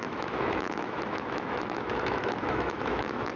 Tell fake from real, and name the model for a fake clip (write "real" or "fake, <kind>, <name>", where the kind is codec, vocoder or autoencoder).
fake, autoencoder, DAC-VAE